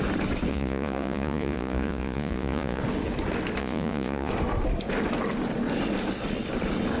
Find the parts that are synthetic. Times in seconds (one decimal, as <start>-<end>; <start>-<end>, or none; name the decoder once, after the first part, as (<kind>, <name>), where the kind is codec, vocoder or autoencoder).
0.5-2.8 (vocoder, Vocos); 3.6-4.3